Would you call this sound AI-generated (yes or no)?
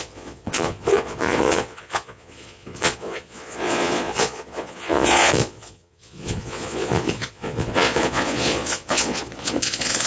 yes